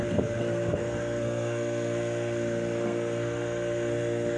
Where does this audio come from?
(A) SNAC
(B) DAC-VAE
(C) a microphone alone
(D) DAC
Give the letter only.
A